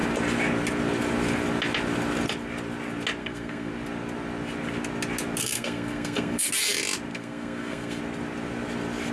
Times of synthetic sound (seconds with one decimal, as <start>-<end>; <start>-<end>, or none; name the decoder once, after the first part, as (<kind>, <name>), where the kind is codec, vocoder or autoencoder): 3.2-3.7 (codec, SNAC); 5.4-6.5; 7.1-8.0